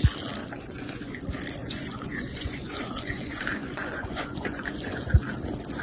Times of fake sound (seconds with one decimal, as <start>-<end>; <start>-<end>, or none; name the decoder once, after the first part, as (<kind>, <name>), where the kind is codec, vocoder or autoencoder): 0.4-1.2 (vocoder, Vocos); 1.6-5.1